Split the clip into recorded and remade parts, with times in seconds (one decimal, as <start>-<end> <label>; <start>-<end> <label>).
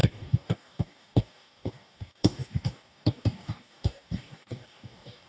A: 0.0-5.3 remade